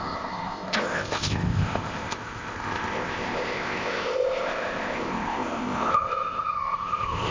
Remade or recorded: remade